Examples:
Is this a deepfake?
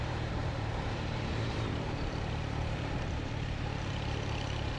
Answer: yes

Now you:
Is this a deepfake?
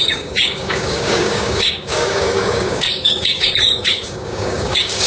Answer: yes